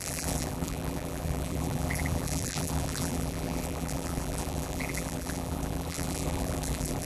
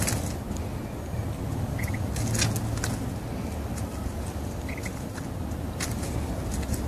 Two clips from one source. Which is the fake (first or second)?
first